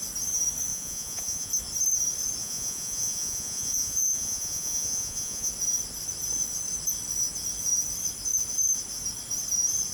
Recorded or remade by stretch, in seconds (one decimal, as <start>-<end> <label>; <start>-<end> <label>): 0.0-0.7 recorded; 0.7-1.5 remade; 1.5-2.4 recorded; 2.4-5.5 remade; 5.5-9.9 recorded

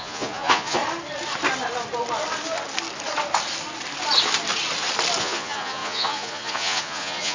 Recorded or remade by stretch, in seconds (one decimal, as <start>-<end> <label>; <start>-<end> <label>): 0.0-0.8 remade; 0.8-5.2 recorded; 5.2-7.3 remade

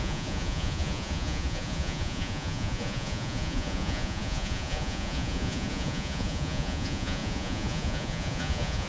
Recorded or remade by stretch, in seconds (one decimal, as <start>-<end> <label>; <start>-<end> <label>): 0.0-8.9 remade

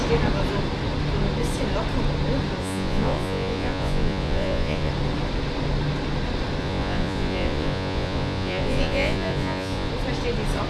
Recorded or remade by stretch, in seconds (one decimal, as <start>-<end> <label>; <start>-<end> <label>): 0.0-2.6 recorded; 2.6-4.9 remade; 4.9-6.6 recorded; 6.6-9.9 remade; 9.9-10.7 recorded

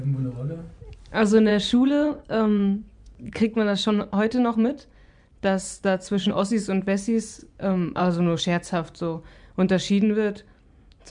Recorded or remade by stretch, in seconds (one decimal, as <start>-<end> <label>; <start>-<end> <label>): 0.0-1.5 recorded; 1.5-6.3 remade; 6.3-7.4 recorded; 7.4-8.4 remade; 8.4-11.1 recorded